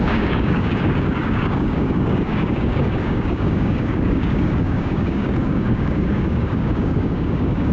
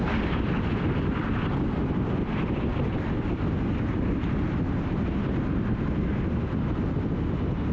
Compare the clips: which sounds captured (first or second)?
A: second